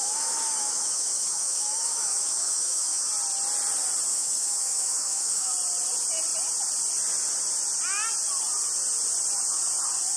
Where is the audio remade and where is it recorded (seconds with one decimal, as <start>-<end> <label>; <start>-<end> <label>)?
0.0-3.1 remade; 3.1-4.1 recorded; 4.1-5.5 remade; 5.5-10.2 recorded

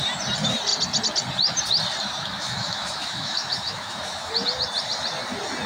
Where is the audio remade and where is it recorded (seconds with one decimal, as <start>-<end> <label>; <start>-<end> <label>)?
0.0-2.2 recorded; 2.2-4.3 remade; 4.3-5.7 recorded

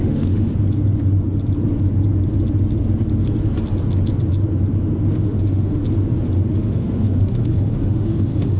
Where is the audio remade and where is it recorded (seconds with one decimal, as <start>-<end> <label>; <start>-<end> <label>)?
0.0-0.5 remade; 0.5-5.1 recorded; 5.1-5.8 remade; 5.8-6.5 recorded; 6.5-8.6 remade